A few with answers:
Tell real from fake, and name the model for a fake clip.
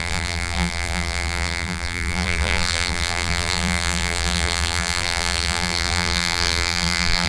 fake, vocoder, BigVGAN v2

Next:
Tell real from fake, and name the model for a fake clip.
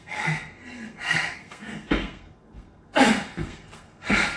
fake, codec, SNAC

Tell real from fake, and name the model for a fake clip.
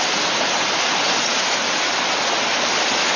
real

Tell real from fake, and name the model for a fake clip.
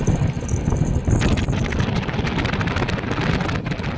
real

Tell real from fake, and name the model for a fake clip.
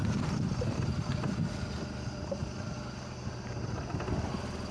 real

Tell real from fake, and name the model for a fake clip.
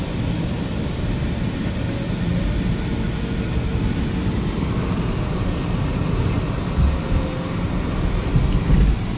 real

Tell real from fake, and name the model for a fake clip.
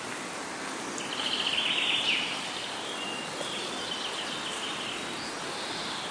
real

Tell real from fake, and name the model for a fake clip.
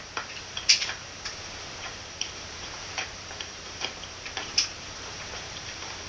fake, vocoder, BigVGAN v2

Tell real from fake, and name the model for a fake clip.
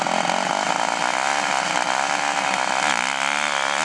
real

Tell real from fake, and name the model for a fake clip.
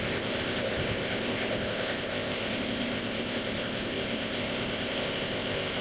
fake, codec, ZipCodec